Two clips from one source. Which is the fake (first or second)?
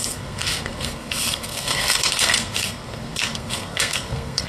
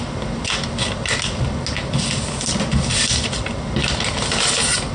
first